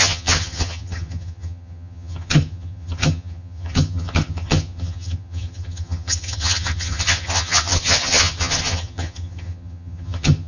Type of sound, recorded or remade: remade